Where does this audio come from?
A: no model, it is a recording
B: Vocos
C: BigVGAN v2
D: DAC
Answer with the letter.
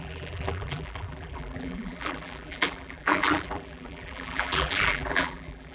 C